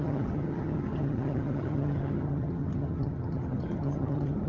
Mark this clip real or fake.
fake